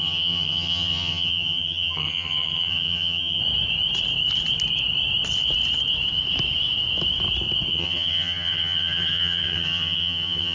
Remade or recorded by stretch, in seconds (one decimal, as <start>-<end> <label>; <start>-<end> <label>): 0.0-3.4 remade; 3.4-7.7 recorded; 7.7-10.5 remade